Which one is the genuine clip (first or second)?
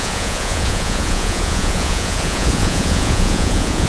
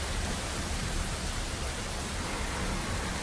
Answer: second